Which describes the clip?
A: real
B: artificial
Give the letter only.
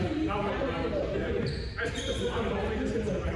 A